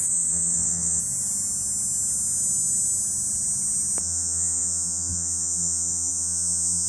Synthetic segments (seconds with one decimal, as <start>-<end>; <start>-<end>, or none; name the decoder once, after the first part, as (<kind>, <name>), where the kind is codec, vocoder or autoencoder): 0.0-1.0 (vocoder, WaveNeXt); 4.0-6.9